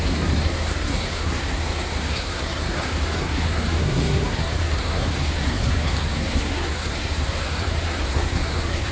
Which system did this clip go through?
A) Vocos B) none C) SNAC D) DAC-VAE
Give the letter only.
C